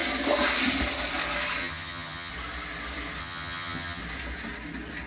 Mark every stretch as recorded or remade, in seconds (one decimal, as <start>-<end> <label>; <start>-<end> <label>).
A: 0.0-1.6 recorded; 1.6-2.3 remade; 2.3-3.2 recorded; 3.2-4.0 remade; 4.0-5.1 recorded